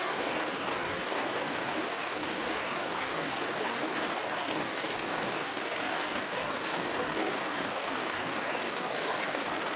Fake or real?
fake